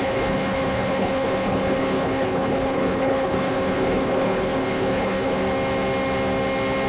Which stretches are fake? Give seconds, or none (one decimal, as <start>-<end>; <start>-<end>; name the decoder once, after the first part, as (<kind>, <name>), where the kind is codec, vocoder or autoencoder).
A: 0.0-5.4 (codec, HILCodec)